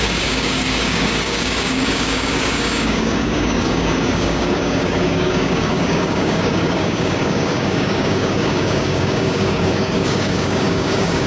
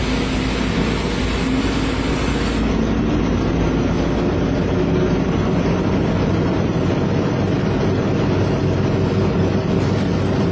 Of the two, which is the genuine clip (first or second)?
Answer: second